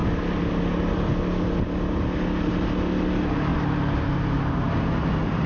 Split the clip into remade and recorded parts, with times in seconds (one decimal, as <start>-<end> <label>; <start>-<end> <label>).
0.0-5.5 recorded